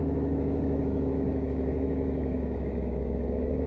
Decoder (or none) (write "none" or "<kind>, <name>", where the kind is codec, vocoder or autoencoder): autoencoder, DAC-VAE